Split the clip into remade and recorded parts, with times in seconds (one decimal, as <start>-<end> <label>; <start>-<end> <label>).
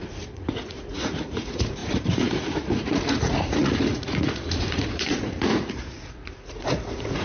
0.0-7.2 remade